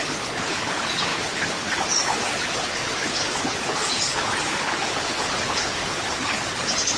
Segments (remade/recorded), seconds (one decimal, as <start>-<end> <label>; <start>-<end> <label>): 0.0-7.0 remade